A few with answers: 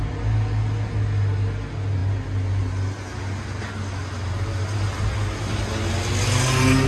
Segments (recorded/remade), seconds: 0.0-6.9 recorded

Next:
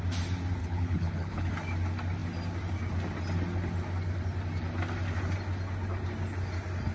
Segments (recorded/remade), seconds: 0.0-0.6 recorded; 0.6-1.5 remade; 1.5-6.9 recorded

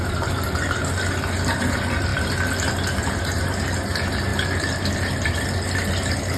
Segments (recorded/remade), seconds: 0.0-6.4 recorded

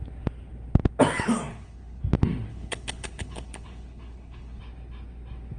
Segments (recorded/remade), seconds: 0.0-1.5 recorded; 1.5-2.0 remade; 2.0-2.5 recorded; 2.5-4.6 remade; 4.6-5.6 recorded

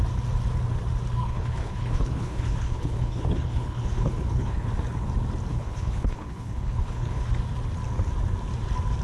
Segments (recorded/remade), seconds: 0.0-1.2 recorded; 1.2-4.7 remade; 4.7-5.5 recorded; 5.5-7.3 remade; 7.3-9.0 recorded